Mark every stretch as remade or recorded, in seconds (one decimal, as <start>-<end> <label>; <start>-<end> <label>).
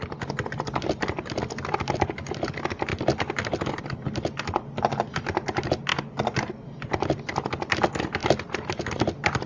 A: 0.0-5.9 remade; 5.9-6.8 recorded; 6.8-8.2 remade; 8.2-8.8 recorded; 8.8-9.5 remade